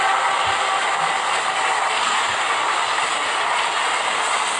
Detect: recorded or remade recorded